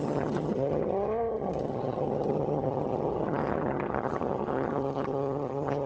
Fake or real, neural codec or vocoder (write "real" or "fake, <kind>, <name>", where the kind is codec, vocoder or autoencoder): fake, vocoder, HiFi-GAN